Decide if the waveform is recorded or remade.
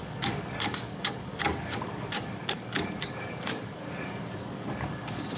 remade